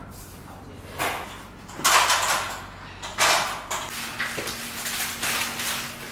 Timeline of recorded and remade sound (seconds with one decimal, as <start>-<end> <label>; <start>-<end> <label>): 0.0-6.1 recorded